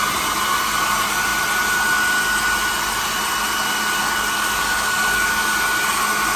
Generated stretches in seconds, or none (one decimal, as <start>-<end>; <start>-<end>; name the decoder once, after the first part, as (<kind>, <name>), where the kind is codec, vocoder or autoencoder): 4.0-5.5 (codec, DAC)